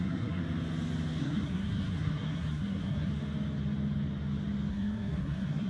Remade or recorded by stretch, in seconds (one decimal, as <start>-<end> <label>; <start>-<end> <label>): 0.0-0.4 remade; 0.4-1.2 recorded; 1.2-3.1 remade; 3.1-4.7 recorded; 4.7-5.7 remade